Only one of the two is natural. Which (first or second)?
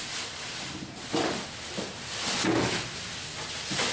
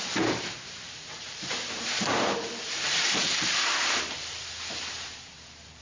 first